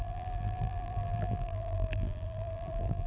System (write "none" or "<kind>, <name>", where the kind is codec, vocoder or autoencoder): vocoder, BigVGAN v2